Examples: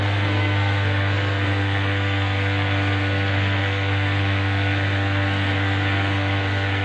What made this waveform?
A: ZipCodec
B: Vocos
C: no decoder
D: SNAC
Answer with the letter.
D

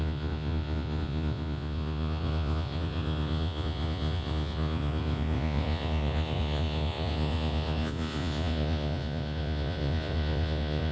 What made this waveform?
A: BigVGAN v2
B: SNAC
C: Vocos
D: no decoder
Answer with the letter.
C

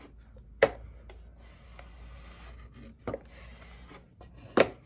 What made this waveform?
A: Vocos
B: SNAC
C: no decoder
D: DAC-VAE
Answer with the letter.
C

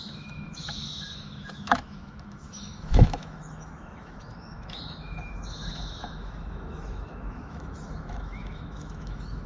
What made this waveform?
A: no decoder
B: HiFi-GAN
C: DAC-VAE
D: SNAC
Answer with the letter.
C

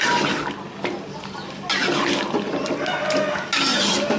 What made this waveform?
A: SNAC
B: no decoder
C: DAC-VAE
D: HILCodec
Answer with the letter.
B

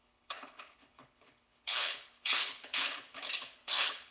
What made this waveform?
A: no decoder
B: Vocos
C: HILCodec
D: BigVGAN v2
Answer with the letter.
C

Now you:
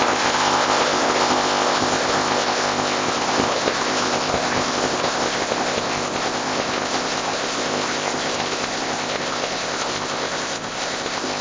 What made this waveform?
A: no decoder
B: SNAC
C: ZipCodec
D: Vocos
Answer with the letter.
C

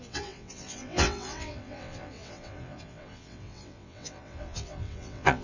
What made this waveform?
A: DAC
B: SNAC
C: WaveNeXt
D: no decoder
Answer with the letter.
C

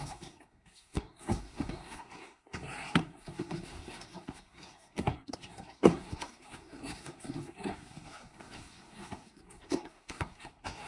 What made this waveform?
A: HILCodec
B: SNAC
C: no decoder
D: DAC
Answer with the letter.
B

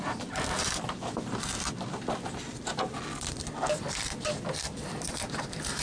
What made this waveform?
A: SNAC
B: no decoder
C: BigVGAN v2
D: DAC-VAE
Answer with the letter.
C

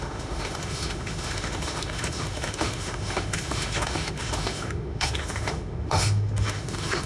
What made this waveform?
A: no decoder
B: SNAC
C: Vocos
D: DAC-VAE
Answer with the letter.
D